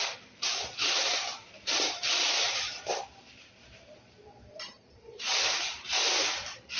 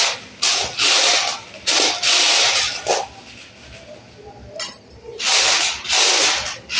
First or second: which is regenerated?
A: first